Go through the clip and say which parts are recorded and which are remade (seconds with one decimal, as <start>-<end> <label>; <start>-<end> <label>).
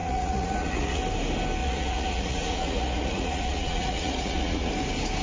0.0-1.0 remade; 1.0-1.6 recorded; 1.6-4.7 remade; 4.7-5.2 recorded